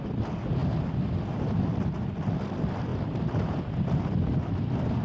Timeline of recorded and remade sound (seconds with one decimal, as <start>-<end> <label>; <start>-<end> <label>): 0.0-2.9 recorded; 2.9-3.6 remade; 3.6-5.0 recorded